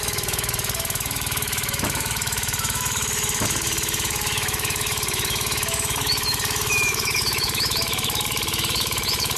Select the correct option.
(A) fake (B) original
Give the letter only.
A